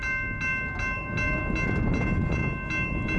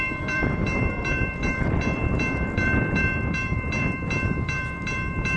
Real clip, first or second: first